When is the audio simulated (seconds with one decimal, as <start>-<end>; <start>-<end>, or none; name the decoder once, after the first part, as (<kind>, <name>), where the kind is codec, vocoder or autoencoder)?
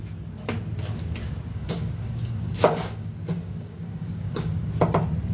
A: 1.5-4.7 (codec, DAC)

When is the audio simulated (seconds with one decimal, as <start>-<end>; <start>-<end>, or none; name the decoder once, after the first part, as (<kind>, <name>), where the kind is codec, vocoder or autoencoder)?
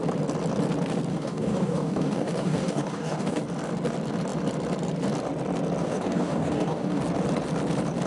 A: 1.1-3.4 (codec, DAC); 5.8-7.0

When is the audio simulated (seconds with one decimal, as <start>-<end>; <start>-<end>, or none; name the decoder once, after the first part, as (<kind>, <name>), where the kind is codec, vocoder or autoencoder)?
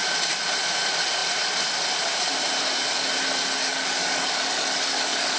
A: 3.6-5.4 (codec, DAC)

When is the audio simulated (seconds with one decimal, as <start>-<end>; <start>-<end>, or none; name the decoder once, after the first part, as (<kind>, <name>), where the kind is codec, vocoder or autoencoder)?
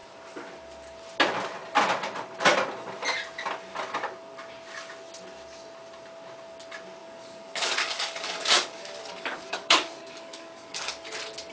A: 7.0-10.9 (codec, DAC)